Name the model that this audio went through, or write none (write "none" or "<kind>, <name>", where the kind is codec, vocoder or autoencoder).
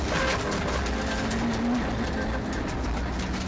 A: none